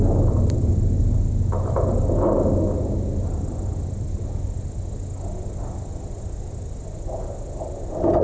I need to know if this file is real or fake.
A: real